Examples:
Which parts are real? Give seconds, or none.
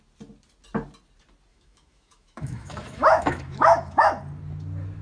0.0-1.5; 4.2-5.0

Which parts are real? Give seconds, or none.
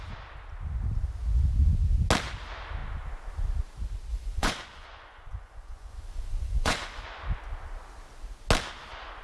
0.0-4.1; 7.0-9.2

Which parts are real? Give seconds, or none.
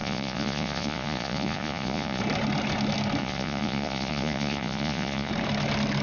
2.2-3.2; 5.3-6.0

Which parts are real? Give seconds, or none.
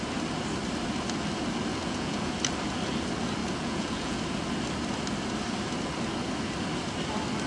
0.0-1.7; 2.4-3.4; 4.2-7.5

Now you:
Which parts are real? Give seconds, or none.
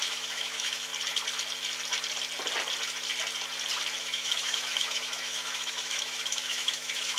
0.9-4.0